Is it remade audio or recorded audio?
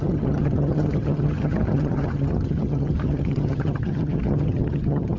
remade